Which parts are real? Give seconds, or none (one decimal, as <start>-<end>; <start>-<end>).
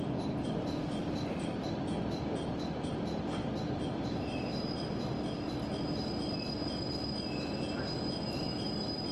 0.0-1.0; 3.0-9.1